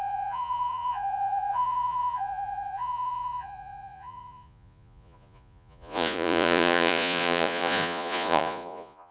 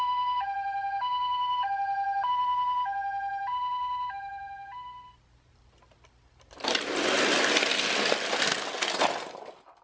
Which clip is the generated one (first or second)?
first